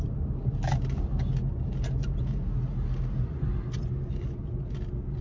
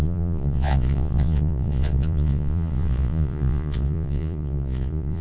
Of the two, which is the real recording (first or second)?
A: first